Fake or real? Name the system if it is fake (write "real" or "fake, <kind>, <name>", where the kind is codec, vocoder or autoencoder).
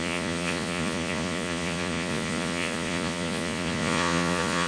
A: fake, vocoder, Vocos